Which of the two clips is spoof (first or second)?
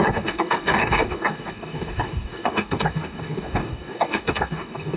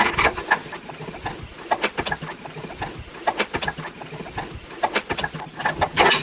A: first